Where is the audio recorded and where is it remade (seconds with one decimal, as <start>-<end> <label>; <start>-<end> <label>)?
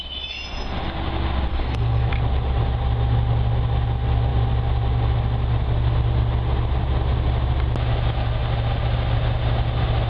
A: 0.0-1.5 recorded; 1.5-2.1 remade; 2.1-10.1 recorded